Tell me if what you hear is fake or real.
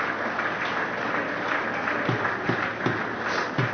real